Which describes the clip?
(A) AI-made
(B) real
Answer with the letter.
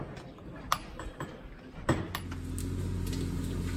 B